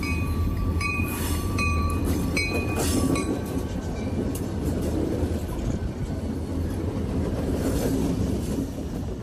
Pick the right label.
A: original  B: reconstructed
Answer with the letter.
B